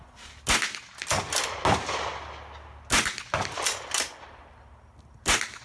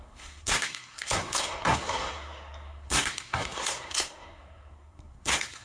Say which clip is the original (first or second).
first